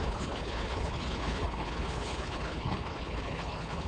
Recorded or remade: remade